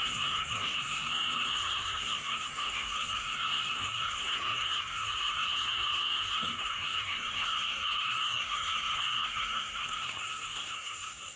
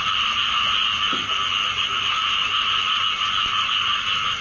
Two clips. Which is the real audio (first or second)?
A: second